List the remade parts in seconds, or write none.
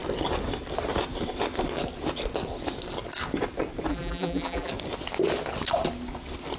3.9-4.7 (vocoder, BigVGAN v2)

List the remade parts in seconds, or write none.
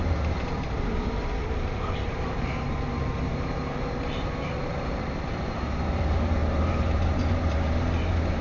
0.0-8.4 (vocoder, BigVGAN v2)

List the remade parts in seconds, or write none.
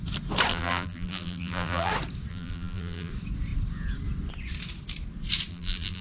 0.5-1.9 (vocoder, BigVGAN v2); 2.3-3.1; 5.5-6.0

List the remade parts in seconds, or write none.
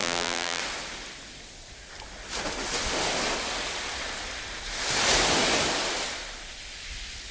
0.0-0.6 (vocoder, BigVGAN v2)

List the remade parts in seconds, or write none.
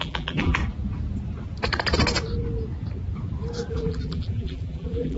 0.0-0.6 (vocoder, BigVGAN v2); 3.7-5.2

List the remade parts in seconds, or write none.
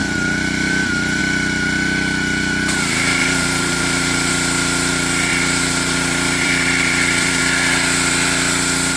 0.0-1.2 (vocoder, BigVGAN v2); 3.2-4.3; 5.3-7.4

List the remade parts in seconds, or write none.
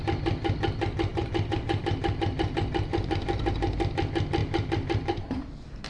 1.1-1.8 (vocoder, BigVGAN v2); 2.9-3.5; 4.4-5.9